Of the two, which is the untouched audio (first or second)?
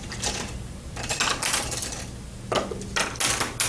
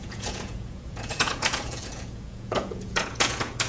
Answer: first